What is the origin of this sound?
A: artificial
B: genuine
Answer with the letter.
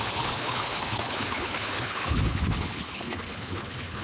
A